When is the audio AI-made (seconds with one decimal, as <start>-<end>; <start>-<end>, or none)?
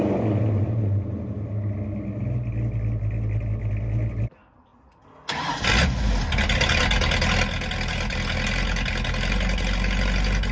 none